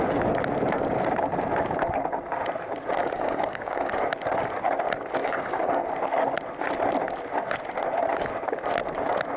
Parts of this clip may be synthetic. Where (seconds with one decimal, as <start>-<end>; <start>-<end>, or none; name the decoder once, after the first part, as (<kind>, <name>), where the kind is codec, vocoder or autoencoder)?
3.0-3.9 (codec, DAC); 5.2-5.9